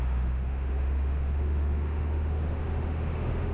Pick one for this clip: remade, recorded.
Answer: remade